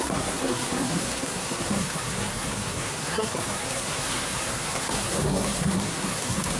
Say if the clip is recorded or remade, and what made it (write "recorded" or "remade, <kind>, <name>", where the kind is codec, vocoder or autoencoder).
remade, codec, SNAC